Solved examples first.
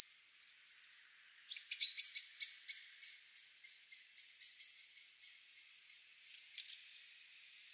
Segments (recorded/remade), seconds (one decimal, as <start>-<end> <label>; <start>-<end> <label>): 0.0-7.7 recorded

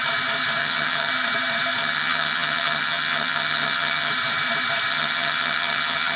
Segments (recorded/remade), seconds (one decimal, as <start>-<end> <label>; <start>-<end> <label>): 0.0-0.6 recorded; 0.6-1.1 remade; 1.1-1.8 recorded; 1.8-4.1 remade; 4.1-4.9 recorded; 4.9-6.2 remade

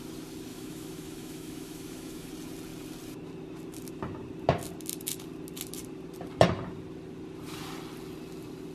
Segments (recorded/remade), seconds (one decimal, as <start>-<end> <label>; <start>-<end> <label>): 0.0-0.5 recorded; 0.5-2.3 remade; 2.3-8.7 recorded

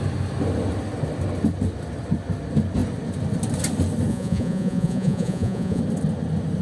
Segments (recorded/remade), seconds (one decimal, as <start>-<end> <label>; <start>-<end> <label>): 0.0-4.1 recorded; 4.1-5.8 remade; 5.8-6.6 recorded

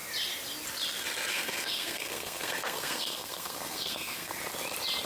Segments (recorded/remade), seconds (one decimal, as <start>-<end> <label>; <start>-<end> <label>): 0.0-1.3 recorded; 1.3-4.4 remade; 4.4-5.1 recorded

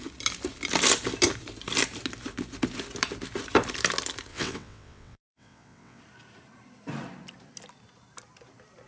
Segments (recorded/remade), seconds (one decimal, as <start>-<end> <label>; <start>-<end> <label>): 0.0-4.3 recorded; 4.3-6.0 remade; 6.0-8.9 recorded